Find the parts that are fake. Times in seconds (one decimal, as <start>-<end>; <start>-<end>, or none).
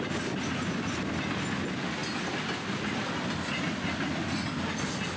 none